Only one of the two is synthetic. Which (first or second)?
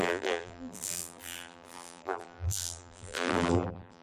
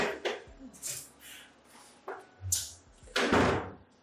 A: first